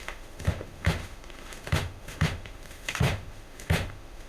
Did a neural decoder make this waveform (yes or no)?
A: yes